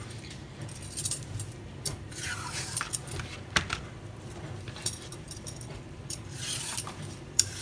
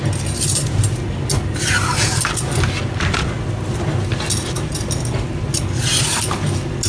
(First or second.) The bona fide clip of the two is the second